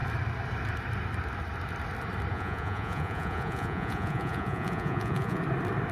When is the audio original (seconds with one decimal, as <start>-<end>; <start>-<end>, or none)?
0.0-2.3; 5.4-5.9

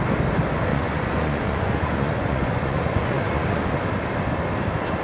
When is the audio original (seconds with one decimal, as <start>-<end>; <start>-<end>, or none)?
0.0-0.7; 3.7-5.0

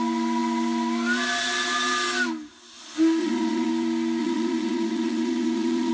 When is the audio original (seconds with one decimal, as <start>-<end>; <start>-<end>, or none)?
0.0-3.2; 3.7-4.2

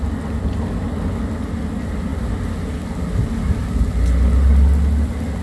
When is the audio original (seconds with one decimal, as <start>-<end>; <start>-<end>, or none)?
0.0-5.4

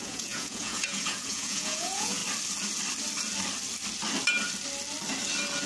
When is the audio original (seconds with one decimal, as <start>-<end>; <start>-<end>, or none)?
2.2-5.7

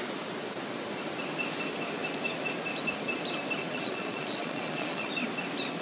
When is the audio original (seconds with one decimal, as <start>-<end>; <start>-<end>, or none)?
0.0-3.6; 5.1-5.8

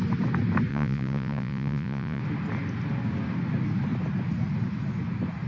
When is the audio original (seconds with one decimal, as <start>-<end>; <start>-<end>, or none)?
0.0-0.7; 2.2-5.5